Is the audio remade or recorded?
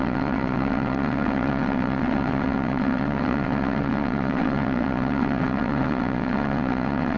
remade